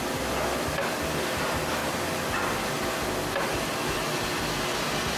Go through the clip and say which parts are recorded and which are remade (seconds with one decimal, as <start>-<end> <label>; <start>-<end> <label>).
0.0-5.2 recorded